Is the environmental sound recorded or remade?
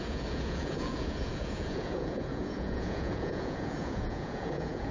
remade